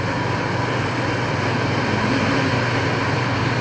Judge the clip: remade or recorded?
recorded